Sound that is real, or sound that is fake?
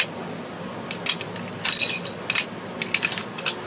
real